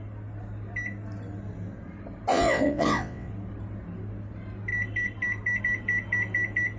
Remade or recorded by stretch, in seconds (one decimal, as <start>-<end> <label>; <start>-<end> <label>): 0.0-2.3 recorded; 2.3-3.3 remade; 3.3-6.8 recorded